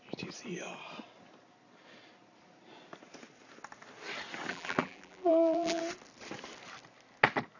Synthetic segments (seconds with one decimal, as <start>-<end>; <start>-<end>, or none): 4.5-5.8